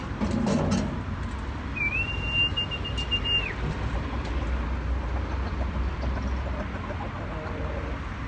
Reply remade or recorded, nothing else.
recorded